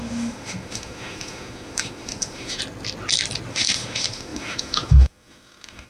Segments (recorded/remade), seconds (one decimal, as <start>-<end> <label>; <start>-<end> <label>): 0.0-2.6 remade; 2.6-3.5 recorded; 3.5-5.9 remade